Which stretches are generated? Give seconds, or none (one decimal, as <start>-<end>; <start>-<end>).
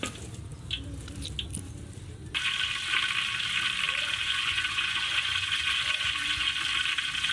4.2-6.6